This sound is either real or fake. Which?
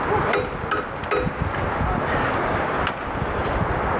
real